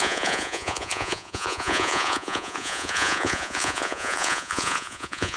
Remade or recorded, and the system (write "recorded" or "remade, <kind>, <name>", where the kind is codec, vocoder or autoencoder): remade, vocoder, Vocos